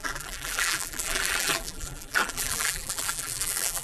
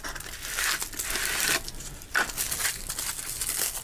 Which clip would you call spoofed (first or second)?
first